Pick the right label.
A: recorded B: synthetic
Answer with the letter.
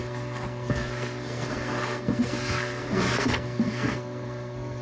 B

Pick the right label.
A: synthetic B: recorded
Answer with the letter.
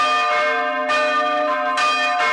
B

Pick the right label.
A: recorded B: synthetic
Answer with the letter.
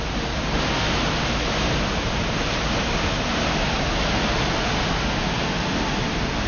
A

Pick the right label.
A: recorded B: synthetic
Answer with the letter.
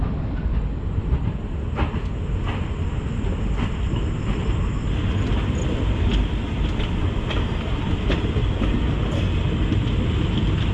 A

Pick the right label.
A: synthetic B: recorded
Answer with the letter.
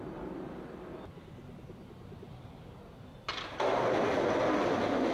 B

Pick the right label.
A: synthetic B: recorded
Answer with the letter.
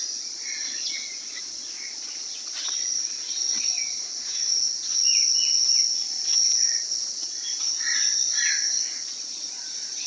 A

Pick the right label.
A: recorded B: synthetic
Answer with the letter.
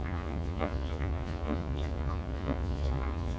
B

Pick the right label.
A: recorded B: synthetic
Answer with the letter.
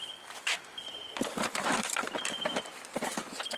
B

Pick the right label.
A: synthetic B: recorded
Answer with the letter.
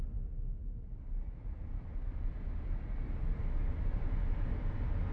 B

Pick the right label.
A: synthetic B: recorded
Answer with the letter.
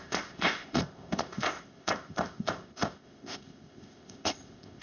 A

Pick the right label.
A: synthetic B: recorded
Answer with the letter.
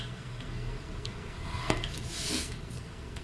A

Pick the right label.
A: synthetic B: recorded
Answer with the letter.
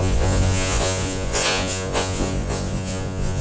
A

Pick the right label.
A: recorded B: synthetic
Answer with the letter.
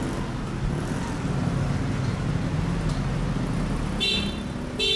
A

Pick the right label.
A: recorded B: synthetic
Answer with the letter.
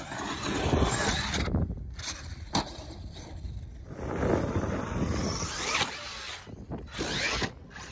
A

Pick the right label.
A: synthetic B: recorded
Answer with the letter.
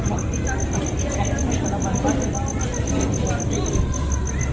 B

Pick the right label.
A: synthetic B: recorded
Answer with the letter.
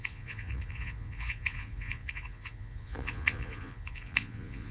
A